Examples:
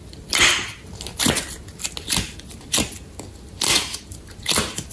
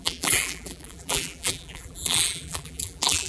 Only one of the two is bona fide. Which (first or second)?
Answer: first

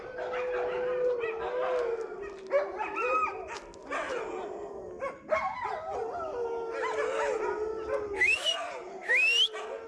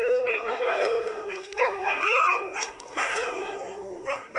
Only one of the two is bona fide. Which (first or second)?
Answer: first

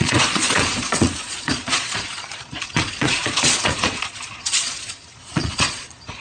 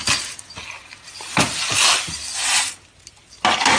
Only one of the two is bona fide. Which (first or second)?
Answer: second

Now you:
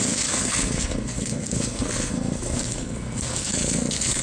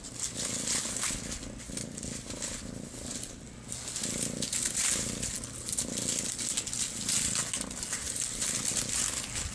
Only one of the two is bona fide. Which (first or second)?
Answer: second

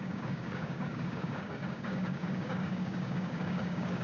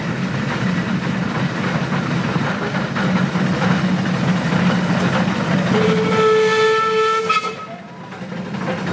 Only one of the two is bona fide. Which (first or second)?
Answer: second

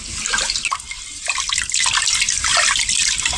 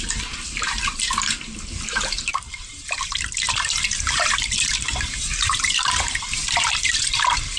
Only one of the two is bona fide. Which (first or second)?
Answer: first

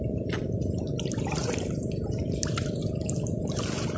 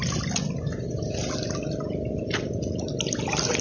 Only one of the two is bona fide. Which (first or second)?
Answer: second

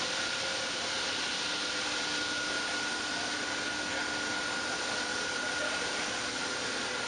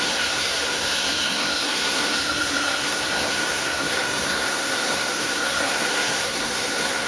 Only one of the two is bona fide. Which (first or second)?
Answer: first